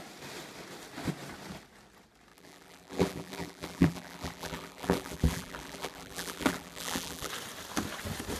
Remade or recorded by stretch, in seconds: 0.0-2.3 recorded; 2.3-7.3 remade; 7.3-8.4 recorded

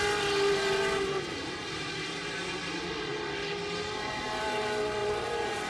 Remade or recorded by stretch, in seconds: 0.0-5.0 recorded; 5.0-5.7 remade

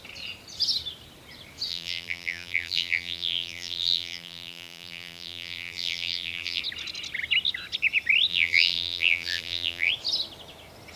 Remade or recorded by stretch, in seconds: 0.0-1.7 recorded; 1.7-6.6 remade; 6.6-8.3 recorded; 8.3-9.9 remade; 9.9-11.0 recorded

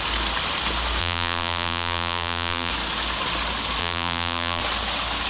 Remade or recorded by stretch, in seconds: 0.0-1.0 recorded; 1.0-2.7 remade; 2.7-3.8 recorded; 3.8-4.6 remade; 4.6-5.3 recorded

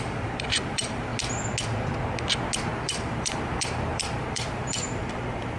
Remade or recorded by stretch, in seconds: 0.0-1.1 remade; 1.1-2.7 recorded; 2.7-5.6 remade